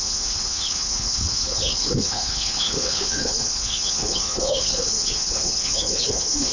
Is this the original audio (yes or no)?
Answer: no